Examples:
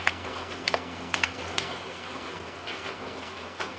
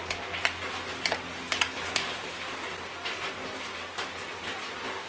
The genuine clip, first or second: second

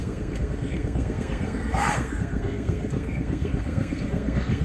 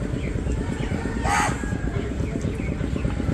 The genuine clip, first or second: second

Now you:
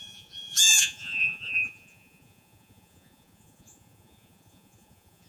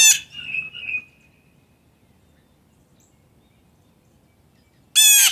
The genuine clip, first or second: second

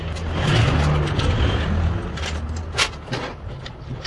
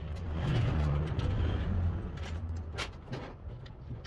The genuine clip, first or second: first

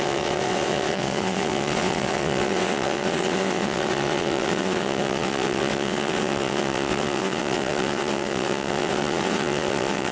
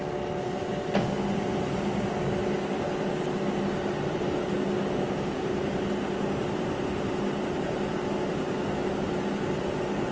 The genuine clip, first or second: second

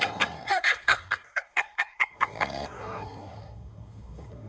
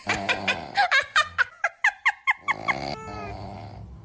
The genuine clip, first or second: second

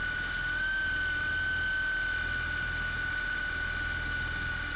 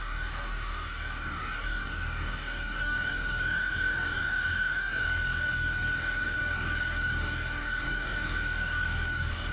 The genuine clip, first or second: first